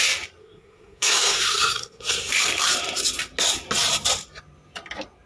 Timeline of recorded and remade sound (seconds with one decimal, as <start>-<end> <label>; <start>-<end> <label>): 0.0-0.4 recorded; 0.4-2.3 remade; 2.3-5.3 recorded